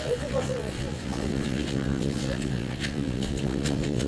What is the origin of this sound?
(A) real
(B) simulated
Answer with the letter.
B